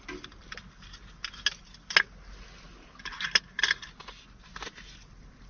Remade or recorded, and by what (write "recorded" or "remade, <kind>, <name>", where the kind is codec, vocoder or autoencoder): recorded